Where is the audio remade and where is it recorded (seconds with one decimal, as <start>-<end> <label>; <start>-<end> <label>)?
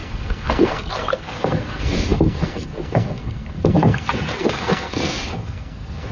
0.0-6.1 remade